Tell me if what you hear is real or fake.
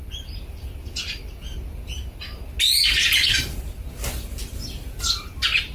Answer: real